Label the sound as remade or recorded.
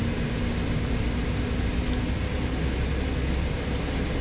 recorded